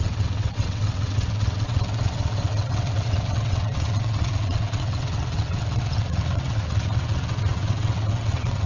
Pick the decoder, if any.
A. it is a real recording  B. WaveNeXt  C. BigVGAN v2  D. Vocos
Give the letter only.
B